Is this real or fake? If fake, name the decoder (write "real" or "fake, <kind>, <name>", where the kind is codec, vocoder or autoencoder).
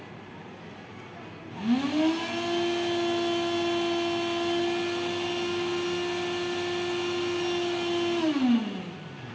real